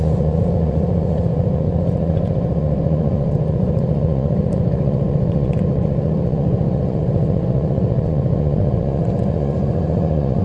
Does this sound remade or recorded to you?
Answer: remade